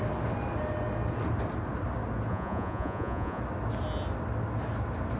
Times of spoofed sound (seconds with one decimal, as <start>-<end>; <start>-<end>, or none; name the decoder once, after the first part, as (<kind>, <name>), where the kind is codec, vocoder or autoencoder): 2.3-3.4 (vocoder, Vocos)